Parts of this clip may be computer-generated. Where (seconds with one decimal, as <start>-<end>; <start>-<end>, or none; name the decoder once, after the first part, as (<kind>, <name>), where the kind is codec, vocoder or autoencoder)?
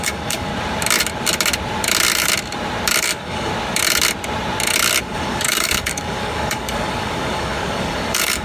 0.0-0.5 (codec, DAC); 3.0-3.5; 5.0-8.4